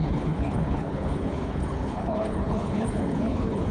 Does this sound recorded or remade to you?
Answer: remade